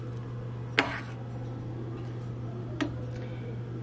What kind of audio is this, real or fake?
real